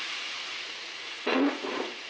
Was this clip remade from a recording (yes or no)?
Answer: yes